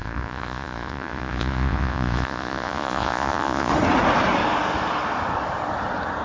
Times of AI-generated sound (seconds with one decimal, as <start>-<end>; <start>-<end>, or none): 0.0-3.7